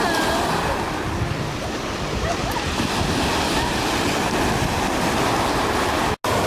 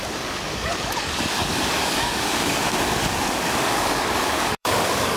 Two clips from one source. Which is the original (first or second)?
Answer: first